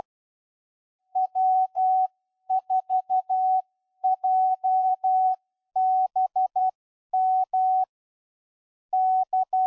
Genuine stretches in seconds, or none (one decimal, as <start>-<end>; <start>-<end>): 0.0-1.0; 5.7-9.7